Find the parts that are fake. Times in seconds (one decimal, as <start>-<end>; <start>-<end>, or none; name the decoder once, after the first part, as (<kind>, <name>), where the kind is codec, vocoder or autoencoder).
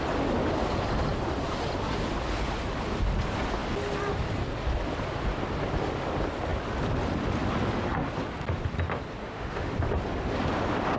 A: 9.2-9.7 (autoencoder, DAC-VAE)